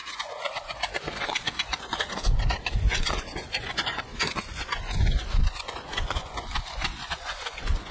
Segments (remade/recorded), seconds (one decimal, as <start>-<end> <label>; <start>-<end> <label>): 0.0-7.9 remade